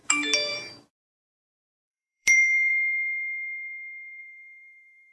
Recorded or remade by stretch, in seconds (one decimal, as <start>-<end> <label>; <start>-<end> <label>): 0.0-0.5 recorded; 0.5-2.7 remade; 2.7-4.2 recorded; 4.2-5.1 remade